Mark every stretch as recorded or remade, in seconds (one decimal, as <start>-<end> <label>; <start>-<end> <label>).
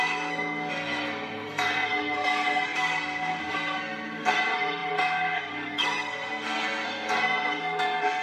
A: 0.0-8.2 remade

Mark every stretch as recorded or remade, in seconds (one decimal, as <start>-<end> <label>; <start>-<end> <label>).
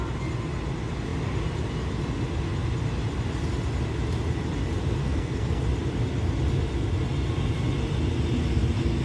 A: 0.0-5.0 recorded; 5.0-5.6 remade; 5.6-9.0 recorded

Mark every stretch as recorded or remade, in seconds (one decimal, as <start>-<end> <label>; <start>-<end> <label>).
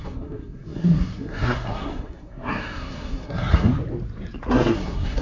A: 0.0-3.7 remade; 3.7-4.5 recorded; 4.5-5.2 remade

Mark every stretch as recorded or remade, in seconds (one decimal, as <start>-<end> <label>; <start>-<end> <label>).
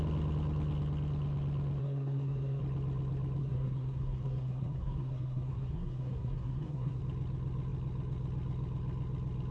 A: 0.0-1.8 recorded; 1.8-2.6 remade; 2.6-3.4 recorded; 3.4-7.0 remade; 7.0-9.5 recorded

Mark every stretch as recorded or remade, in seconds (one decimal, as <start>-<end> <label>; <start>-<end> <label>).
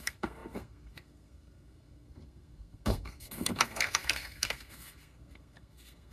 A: 0.0-6.1 remade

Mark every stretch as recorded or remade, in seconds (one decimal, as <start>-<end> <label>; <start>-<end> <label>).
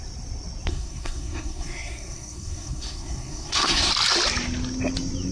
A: 0.0-0.7 recorded; 0.7-3.9 remade; 3.9-5.3 recorded